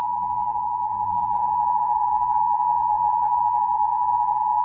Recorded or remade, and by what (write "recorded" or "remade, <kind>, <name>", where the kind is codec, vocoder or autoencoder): remade, vocoder, Vocos